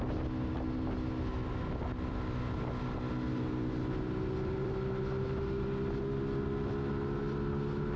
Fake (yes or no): no